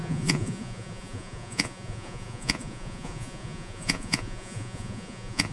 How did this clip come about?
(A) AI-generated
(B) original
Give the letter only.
A